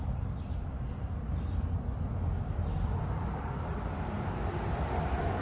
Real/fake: real